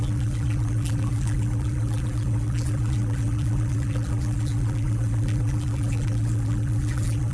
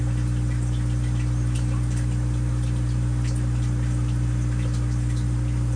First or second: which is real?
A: second